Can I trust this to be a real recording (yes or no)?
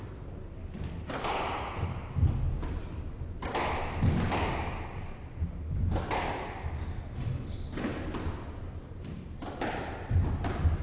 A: yes